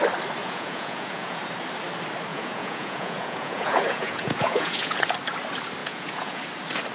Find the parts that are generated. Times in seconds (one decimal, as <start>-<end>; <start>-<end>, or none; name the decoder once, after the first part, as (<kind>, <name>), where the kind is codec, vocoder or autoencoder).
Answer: 0.4-1.4 (vocoder, Vocos); 2.3-5.0; 5.8-6.4